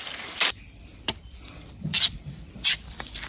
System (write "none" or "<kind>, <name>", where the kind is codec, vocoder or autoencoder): vocoder, BigVGAN v2